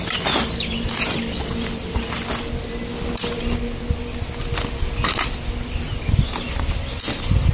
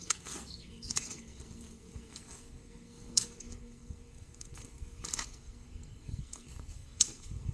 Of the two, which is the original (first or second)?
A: first